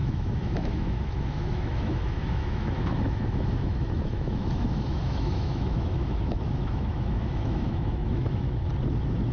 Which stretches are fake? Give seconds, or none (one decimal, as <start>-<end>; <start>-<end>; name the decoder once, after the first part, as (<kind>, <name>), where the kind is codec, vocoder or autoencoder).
0.0-8.7 (autoencoder, DAC-VAE)